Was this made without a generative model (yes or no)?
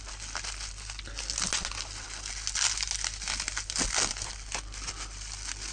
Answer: yes